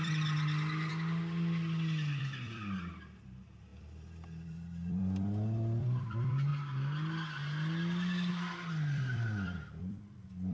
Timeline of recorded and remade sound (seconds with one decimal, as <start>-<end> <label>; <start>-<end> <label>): 0.0-0.9 remade; 0.9-2.2 recorded; 2.2-6.5 remade; 6.5-8.3 recorded; 8.3-10.5 remade